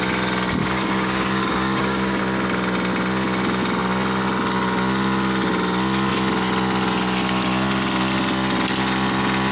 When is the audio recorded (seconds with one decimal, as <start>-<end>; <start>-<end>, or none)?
0.0-0.6; 2.2-9.5